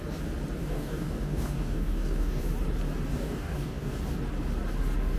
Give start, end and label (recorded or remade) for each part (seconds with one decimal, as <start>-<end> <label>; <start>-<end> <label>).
0.0-0.6 recorded; 0.6-2.4 remade; 2.4-3.1 recorded; 3.1-4.0 remade; 4.0-5.2 recorded